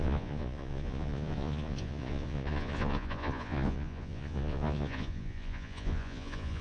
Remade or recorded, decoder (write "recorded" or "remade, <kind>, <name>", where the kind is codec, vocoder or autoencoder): remade, vocoder, Vocos